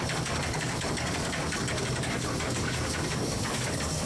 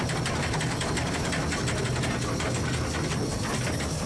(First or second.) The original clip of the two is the second